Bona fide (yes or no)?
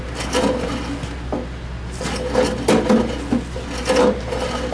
yes